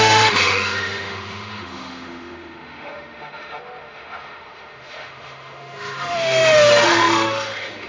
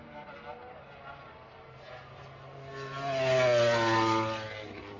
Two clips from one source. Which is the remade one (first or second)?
first